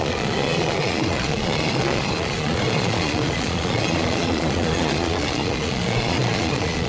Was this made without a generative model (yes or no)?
no